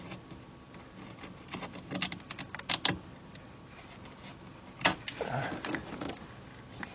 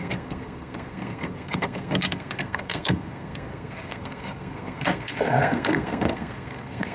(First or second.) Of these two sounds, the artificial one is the second